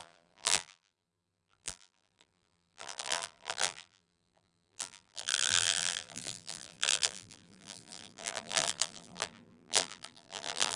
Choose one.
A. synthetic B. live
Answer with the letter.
A